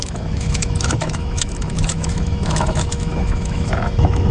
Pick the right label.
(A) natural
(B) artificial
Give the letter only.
B